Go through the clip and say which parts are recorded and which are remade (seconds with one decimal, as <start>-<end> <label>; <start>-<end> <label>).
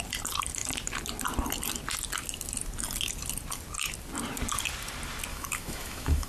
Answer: 0.0-5.3 recorded; 5.3-6.3 remade